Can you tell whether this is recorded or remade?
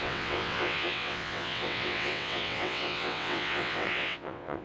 remade